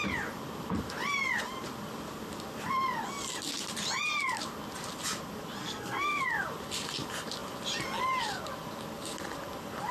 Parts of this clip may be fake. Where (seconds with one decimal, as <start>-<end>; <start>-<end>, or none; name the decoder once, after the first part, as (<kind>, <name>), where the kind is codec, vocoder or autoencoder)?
5.6-6.2 (codec, SNAC)